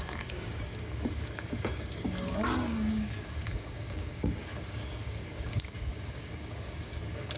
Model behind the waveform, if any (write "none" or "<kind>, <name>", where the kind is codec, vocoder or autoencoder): codec, DAC